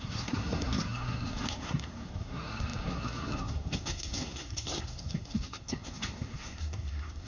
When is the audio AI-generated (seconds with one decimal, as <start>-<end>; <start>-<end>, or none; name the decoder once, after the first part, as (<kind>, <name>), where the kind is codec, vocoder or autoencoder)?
0.0-7.3 (codec, SNAC)